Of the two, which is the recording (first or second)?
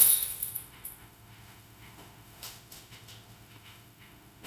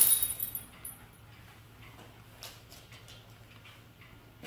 second